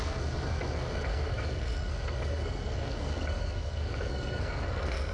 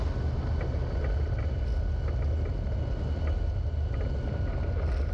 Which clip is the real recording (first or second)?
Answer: second